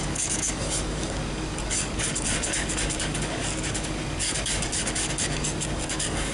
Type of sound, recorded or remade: remade